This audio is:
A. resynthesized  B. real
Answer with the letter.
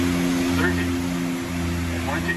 B